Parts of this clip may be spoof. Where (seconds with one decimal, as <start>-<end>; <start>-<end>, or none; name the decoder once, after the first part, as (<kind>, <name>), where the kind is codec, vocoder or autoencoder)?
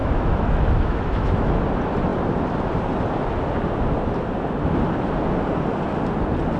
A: 0.0-1.6 (autoencoder, DAC-VAE)